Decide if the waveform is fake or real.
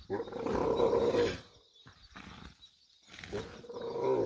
real